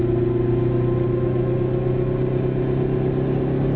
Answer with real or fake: real